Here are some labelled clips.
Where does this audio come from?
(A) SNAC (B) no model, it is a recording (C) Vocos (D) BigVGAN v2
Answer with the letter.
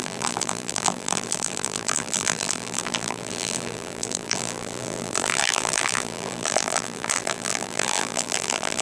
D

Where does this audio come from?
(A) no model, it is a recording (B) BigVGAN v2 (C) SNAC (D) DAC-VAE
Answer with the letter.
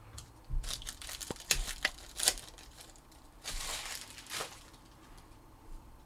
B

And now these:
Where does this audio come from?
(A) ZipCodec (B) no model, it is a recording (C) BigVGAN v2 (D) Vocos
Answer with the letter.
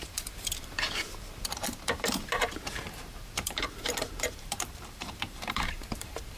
C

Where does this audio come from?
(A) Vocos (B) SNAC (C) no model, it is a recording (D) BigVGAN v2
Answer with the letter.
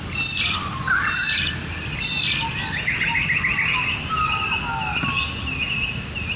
C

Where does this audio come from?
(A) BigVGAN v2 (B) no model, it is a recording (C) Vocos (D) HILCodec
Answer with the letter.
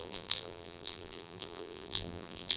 A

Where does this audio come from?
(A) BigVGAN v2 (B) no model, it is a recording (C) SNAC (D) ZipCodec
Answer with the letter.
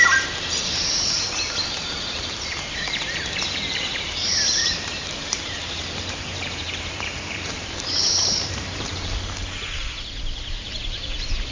A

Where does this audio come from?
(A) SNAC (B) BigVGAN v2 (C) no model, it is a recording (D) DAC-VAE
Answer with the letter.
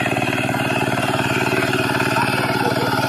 B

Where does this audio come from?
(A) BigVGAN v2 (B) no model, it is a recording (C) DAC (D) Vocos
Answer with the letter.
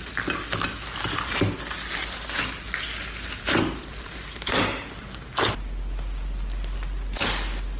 B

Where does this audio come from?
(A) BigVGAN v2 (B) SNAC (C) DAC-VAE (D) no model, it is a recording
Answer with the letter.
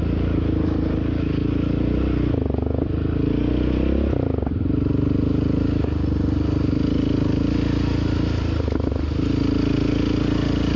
D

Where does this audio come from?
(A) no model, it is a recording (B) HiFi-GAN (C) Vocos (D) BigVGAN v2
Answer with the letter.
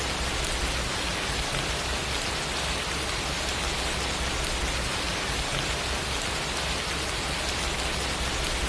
A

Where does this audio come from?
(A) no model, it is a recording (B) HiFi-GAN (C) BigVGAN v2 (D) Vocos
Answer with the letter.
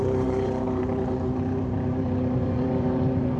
C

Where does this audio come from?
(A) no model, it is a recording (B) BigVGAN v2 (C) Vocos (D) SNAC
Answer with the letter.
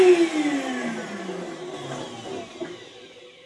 A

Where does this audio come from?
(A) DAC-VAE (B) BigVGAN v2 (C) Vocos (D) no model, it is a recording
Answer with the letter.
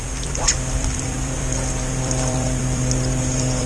B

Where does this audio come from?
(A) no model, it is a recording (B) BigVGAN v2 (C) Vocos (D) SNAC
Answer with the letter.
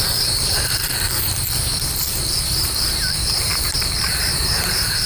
B